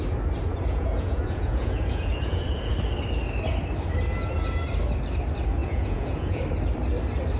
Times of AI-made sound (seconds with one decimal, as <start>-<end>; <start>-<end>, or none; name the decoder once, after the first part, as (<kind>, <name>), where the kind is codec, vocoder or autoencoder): 0.5-2.7 (vocoder, Vocos); 5.6-6.4